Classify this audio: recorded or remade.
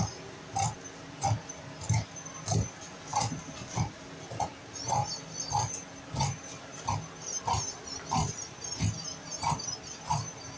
recorded